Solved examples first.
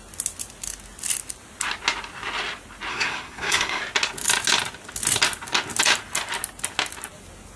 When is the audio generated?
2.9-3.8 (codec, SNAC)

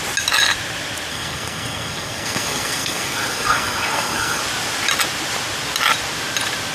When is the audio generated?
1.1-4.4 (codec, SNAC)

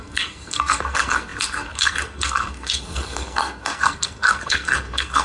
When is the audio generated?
0.0-5.2 (codec, SNAC)